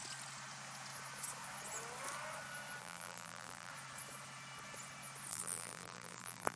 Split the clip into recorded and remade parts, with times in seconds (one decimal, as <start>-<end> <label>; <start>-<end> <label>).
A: 0.0-2.8 recorded; 2.8-3.7 remade; 3.7-5.3 recorded; 5.3-6.6 remade